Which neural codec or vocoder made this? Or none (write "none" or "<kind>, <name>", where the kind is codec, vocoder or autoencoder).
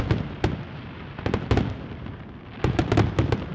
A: none